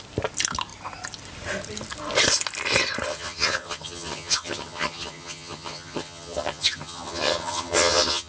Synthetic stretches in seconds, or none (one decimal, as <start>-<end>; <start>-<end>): 3.1-8.3